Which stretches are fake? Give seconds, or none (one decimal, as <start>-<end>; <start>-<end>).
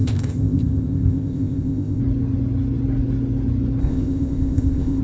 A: 0.0-2.0; 3.8-5.0